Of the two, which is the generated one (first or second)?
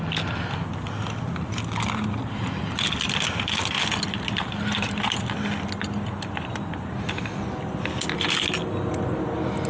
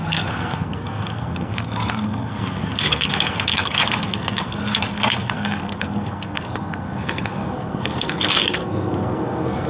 second